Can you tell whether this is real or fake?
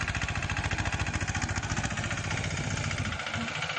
real